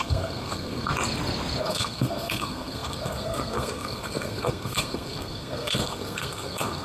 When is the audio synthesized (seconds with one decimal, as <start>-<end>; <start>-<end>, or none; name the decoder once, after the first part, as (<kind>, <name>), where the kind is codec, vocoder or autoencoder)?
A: 0.0-0.9 (codec, SNAC); 1.6-6.8